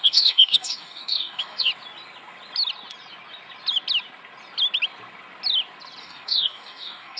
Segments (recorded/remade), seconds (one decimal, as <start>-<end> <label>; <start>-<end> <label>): 0.0-1.7 remade; 1.7-6.0 recorded; 6.0-7.2 remade